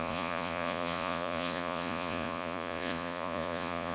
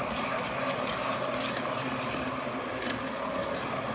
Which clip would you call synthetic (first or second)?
first